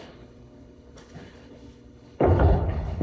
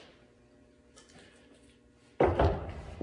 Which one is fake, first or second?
first